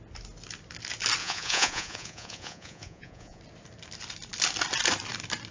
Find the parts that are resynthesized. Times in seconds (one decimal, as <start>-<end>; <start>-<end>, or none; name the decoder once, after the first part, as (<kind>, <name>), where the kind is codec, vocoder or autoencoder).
1.2-3.4 (vocoder, Vocos)